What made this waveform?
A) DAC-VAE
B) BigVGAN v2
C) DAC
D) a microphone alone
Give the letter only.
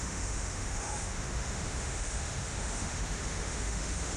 A